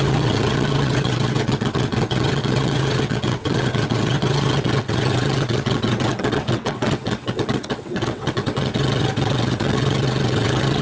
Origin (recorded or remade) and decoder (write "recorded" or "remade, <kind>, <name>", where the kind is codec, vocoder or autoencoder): remade, vocoder, WaveNeXt